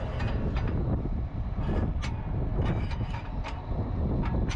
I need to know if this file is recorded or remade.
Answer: recorded